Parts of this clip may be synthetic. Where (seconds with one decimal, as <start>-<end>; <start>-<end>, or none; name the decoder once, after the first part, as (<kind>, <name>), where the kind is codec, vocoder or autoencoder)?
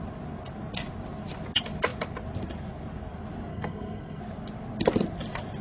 3.5-4.2 (codec, SNAC)